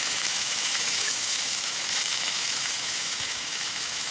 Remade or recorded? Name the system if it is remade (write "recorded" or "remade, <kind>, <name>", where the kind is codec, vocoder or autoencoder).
remade, autoencoder, DAC-VAE